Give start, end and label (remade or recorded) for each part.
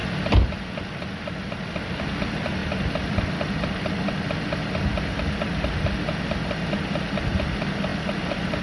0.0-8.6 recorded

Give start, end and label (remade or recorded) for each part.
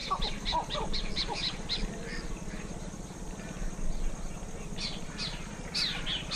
0.0-1.1 remade; 1.1-6.4 recorded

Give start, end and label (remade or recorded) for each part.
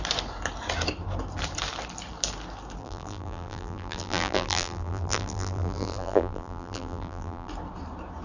0.0-2.8 recorded; 2.8-7.5 remade; 7.5-8.2 recorded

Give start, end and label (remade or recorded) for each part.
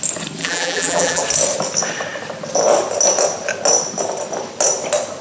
0.0-0.4 recorded; 0.4-1.2 remade; 1.2-5.2 recorded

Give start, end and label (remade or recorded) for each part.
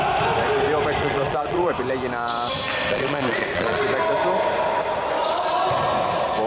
0.0-1.0 recorded; 1.0-1.7 remade; 1.7-2.9 recorded; 2.9-3.8 remade; 3.8-6.5 recorded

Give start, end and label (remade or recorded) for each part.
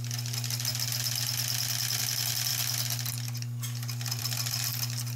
0.0-5.2 recorded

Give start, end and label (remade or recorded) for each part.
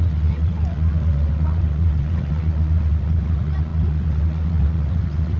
0.0-5.4 remade